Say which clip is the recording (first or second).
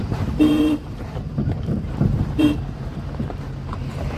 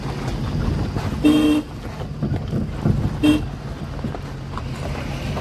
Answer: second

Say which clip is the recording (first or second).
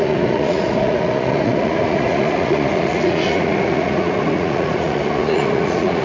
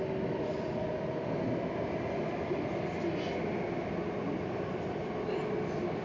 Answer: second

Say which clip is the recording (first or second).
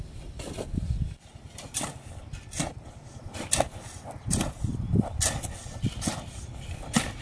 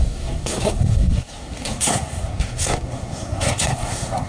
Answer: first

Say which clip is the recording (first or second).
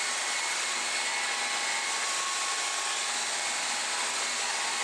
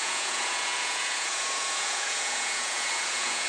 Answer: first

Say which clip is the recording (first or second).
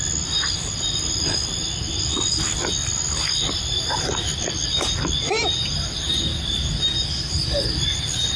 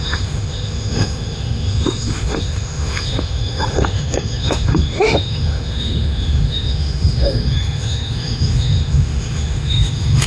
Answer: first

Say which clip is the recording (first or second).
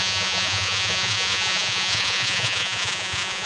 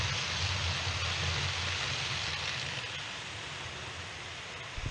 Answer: second